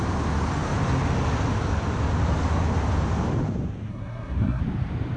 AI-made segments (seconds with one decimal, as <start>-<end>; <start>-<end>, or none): 3.9-4.6